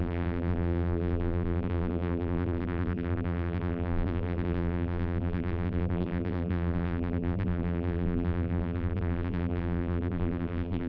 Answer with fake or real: fake